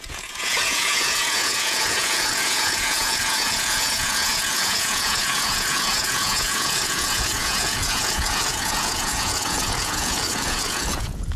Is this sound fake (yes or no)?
yes